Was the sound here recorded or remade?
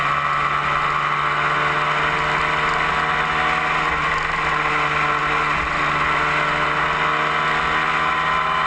recorded